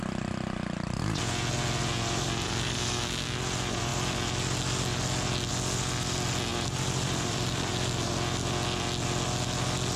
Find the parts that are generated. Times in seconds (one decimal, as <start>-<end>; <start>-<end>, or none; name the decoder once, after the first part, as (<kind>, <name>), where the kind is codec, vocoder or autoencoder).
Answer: 6.5-7.7 (vocoder, BigVGAN v2)